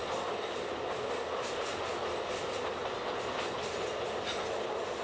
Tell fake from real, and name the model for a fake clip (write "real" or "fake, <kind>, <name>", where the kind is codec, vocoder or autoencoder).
real